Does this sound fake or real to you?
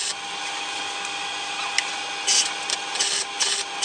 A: real